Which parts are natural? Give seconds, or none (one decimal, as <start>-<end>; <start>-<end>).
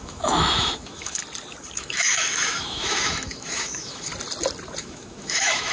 1.2-1.8; 4.1-4.8